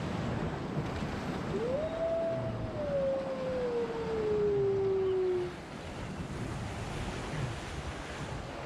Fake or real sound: real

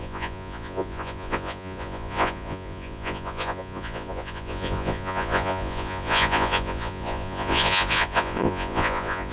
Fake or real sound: fake